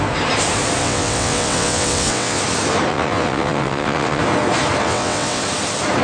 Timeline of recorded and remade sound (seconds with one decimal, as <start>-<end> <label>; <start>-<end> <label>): 0.0-0.8 recorded; 0.8-2.4 remade; 2.4-2.9 recorded; 2.9-4.2 remade; 4.2-4.8 recorded; 4.8-5.4 remade; 5.4-6.0 recorded